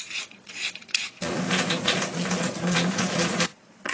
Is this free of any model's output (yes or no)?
no